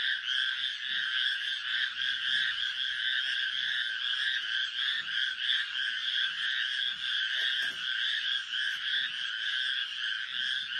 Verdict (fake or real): real